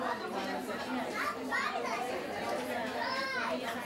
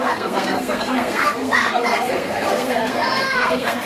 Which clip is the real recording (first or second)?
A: first